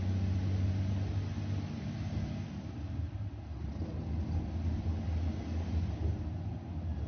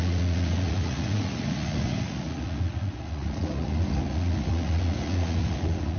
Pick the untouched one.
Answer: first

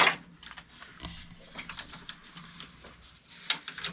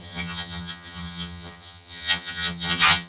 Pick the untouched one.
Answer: first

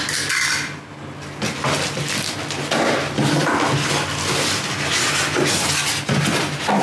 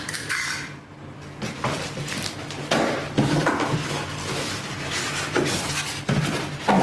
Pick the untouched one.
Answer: first